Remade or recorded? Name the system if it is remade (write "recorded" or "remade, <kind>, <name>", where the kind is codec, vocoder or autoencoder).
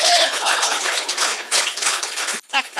remade, codec, HILCodec